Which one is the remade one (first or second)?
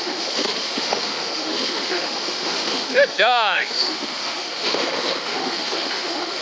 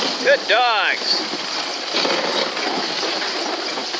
first